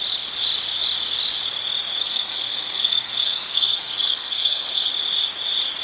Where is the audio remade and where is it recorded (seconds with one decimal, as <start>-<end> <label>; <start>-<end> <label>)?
0.0-2.0 recorded; 2.0-4.9 remade; 4.9-5.8 recorded